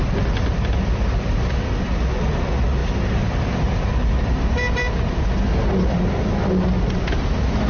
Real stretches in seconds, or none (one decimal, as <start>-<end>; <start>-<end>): 0.0-7.7